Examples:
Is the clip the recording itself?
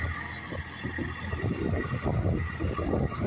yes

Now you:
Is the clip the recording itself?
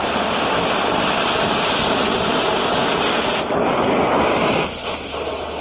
yes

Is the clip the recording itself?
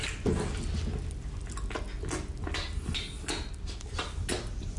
yes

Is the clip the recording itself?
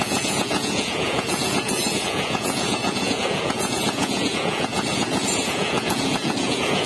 no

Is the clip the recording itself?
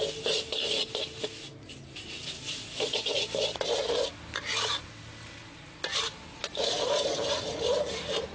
yes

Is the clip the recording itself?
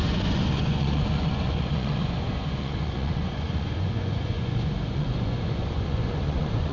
no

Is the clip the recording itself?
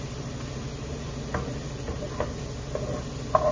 yes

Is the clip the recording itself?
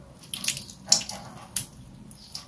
yes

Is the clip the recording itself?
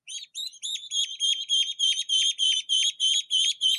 no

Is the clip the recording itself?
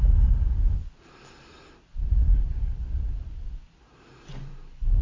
yes